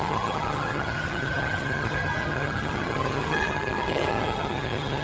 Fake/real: fake